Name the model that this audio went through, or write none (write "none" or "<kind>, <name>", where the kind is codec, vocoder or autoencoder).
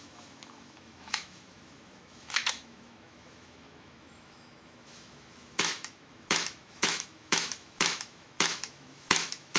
autoencoder, DAC-VAE